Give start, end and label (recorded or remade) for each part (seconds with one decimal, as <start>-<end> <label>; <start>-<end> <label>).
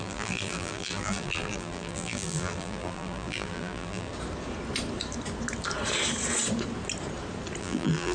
0.0-4.1 remade; 4.1-7.6 recorded; 7.6-8.1 remade